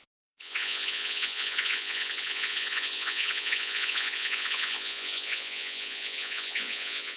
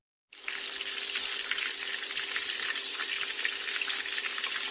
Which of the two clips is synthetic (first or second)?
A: first